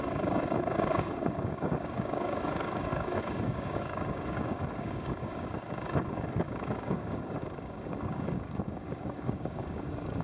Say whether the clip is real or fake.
fake